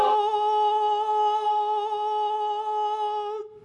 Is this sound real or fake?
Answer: real